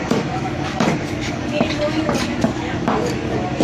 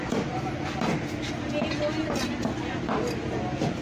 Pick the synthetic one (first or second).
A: first